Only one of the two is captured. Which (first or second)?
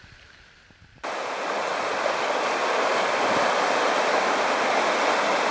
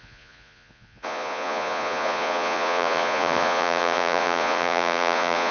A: first